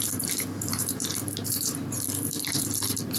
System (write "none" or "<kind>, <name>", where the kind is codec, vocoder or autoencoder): vocoder, BigVGAN v2